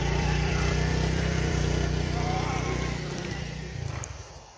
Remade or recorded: remade